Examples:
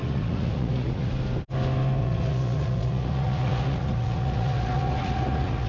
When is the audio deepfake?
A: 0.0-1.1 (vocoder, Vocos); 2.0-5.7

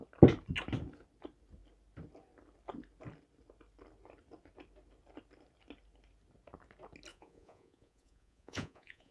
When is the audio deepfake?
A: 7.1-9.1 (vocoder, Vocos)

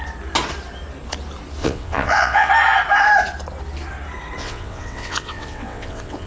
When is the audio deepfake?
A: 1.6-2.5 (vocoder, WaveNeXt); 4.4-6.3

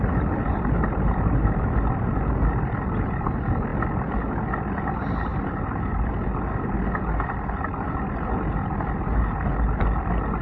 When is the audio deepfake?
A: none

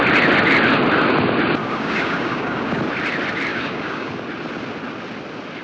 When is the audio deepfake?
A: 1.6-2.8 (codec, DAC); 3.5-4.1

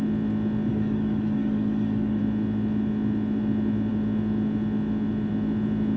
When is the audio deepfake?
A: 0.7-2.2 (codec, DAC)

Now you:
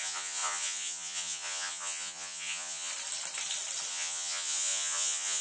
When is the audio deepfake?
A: 0.0-2.9 (vocoder, Vocos); 3.9-5.4

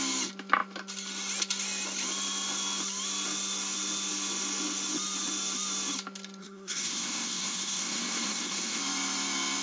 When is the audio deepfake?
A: 6.4-8.8 (codec, SNAC)